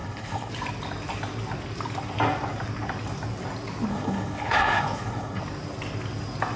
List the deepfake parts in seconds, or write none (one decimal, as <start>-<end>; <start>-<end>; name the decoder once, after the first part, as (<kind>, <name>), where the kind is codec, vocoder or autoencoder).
0.0-0.5 (codec, HILCodec); 3.9-5.4